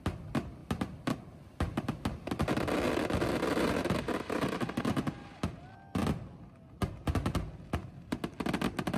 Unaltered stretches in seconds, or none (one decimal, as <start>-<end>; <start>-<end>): 0.0-9.0